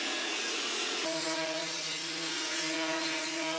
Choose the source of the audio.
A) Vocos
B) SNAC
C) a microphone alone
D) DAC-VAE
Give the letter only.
A